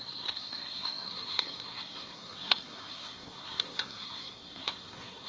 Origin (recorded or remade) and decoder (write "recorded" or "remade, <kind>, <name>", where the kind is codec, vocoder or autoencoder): remade, codec, SNAC